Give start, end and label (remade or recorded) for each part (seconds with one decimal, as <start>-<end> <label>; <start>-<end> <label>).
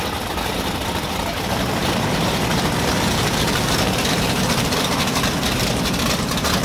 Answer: 0.0-1.8 recorded; 1.8-5.7 remade; 5.7-6.6 recorded